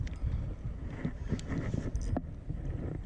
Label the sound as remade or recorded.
recorded